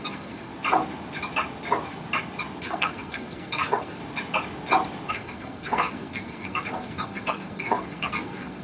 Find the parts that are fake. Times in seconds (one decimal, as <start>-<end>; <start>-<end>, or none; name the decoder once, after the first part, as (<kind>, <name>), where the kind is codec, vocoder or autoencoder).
0.0-0.5 (codec, SNAC); 2.6-4.0; 5.1-8.6